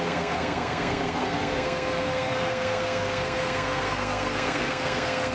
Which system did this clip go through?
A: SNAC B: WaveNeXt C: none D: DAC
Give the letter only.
A